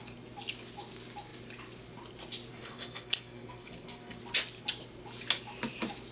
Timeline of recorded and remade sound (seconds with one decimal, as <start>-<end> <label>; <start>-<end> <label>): 0.0-2.5 recorded; 2.5-4.2 remade; 4.2-6.1 recorded